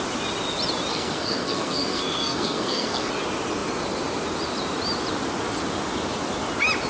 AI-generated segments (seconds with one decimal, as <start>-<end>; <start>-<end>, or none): 0.9-3.1

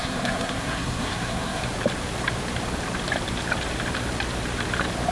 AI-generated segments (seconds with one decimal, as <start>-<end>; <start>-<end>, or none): 0.0-1.6

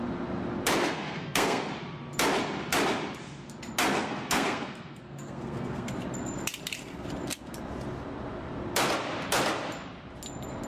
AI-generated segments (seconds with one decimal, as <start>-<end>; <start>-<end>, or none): 0.8-1.7; 3.9-5.9

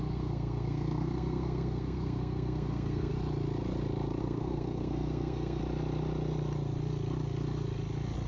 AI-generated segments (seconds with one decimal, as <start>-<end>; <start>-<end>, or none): 0.0-3.1; 4.2-5.6

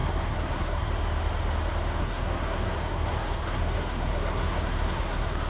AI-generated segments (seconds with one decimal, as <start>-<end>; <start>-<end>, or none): 0.0-0.9; 2.0-5.5

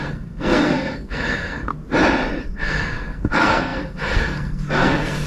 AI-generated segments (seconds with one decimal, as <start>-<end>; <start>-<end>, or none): 0.0-1.7; 2.4-5.3

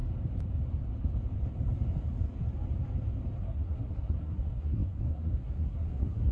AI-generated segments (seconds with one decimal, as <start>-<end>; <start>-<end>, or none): 3.4-6.3